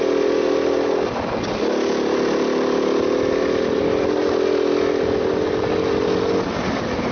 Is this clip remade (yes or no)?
no